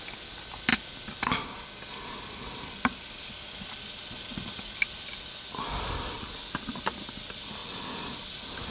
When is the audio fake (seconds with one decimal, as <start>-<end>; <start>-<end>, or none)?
none